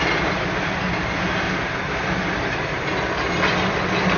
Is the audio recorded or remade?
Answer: recorded